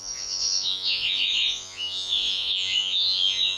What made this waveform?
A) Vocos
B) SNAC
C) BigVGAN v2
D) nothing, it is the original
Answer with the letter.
A